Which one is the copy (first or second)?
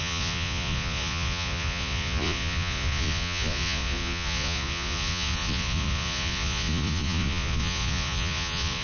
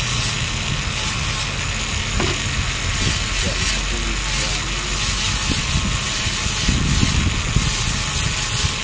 first